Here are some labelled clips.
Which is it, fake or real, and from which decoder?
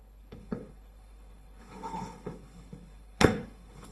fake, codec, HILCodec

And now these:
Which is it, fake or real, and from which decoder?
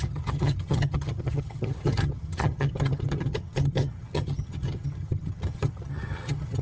fake, vocoder, HiFi-GAN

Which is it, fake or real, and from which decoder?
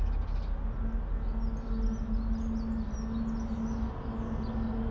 real